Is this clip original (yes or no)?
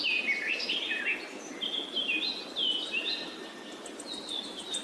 yes